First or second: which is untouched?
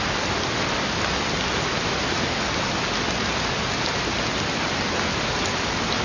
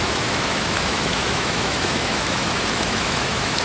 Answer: first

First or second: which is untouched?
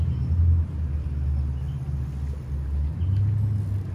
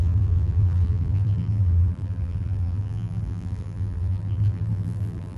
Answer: first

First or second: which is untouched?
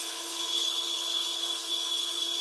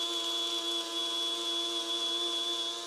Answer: second